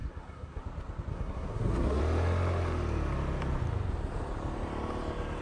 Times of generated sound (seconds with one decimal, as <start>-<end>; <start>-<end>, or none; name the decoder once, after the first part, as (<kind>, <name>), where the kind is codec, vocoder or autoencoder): 0.0-0.6 (codec, SNAC); 1.1-2.0